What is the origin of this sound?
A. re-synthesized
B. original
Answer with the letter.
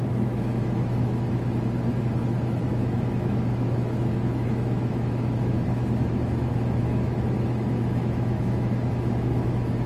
A